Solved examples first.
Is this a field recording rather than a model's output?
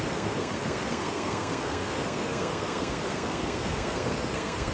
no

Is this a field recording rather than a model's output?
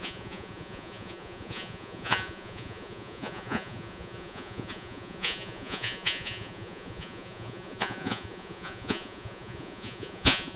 no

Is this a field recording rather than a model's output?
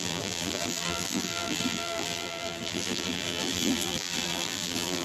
no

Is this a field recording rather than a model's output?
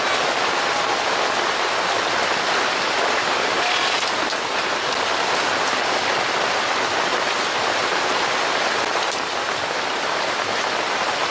yes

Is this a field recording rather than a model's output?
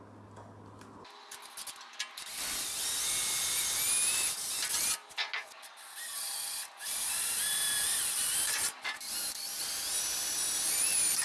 yes